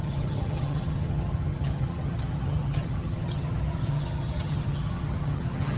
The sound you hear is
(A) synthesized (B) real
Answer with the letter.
A